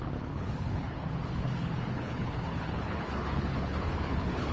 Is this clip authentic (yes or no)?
no